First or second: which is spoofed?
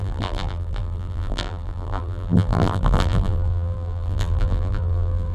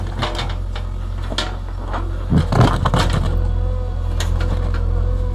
first